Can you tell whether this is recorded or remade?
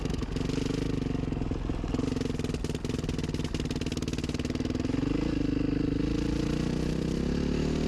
recorded